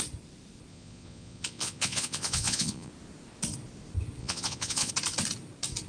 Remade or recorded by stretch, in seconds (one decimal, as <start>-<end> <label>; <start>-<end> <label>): 0.0-0.7 recorded; 0.7-2.9 remade; 2.9-4.2 recorded; 4.2-4.9 remade; 4.9-5.9 recorded